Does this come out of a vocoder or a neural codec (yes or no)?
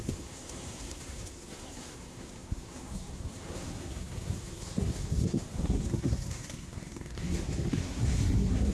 yes